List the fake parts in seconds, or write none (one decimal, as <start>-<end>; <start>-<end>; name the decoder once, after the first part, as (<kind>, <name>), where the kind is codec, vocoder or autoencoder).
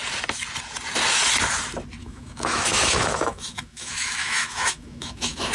2.0-5.5 (autoencoder, DAC-VAE)